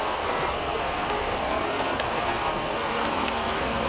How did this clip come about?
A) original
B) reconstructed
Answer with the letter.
B